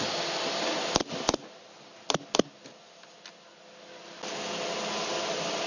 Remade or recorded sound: recorded